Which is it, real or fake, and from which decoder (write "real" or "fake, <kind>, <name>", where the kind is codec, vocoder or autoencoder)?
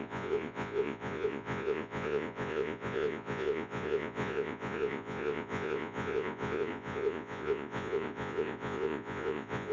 fake, vocoder, Vocos